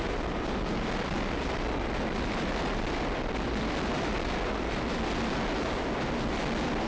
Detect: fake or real fake